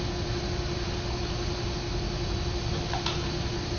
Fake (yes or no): no